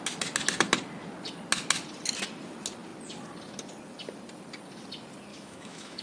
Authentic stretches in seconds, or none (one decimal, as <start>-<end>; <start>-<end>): 0.0-5.3